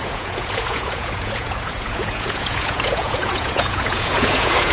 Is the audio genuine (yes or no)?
no